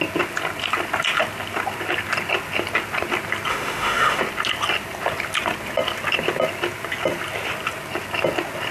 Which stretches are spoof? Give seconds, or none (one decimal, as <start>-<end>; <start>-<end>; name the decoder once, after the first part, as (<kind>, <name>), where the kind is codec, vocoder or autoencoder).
3.5-4.2 (autoencoder, DAC-VAE)